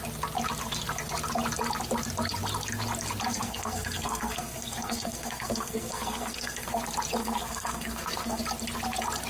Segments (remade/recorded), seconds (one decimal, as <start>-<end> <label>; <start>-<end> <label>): 0.0-3.3 recorded; 3.3-6.8 remade; 6.8-7.2 recorded; 7.2-8.4 remade; 8.4-9.3 recorded